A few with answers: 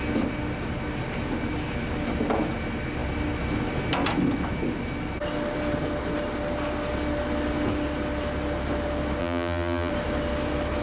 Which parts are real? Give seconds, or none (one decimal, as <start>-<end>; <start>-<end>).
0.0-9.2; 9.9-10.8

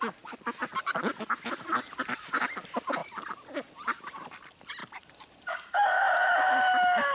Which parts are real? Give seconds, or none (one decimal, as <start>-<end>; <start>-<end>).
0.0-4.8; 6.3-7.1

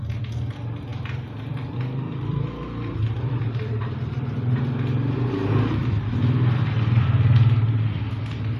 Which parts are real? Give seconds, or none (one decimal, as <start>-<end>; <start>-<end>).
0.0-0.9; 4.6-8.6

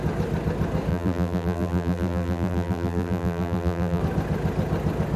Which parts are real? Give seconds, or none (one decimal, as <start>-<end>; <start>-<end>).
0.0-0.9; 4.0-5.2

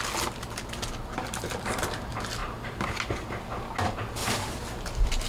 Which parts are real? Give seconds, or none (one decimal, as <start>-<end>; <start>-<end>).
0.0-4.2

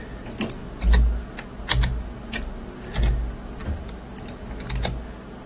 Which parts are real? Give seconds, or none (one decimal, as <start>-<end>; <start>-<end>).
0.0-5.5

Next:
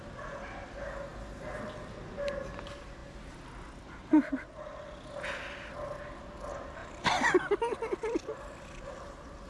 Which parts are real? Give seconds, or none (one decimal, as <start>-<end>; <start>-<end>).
0.0-6.8

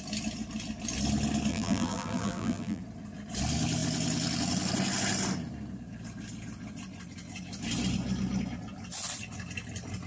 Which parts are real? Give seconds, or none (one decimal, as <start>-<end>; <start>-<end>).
0.0-1.5; 2.8-10.1